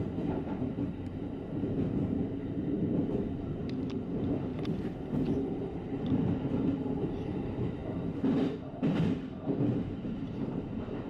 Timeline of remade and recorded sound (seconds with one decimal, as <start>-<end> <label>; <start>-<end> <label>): 0.0-11.1 remade